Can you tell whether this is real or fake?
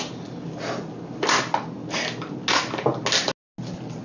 real